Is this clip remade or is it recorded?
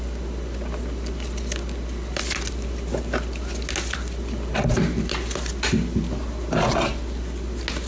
recorded